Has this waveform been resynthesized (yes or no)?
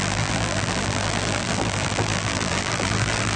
yes